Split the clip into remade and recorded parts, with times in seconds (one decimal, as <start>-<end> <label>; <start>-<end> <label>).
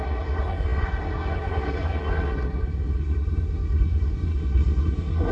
0.0-5.3 remade